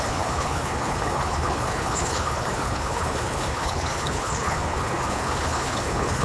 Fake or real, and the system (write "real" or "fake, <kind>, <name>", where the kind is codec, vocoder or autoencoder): fake, codec, HILCodec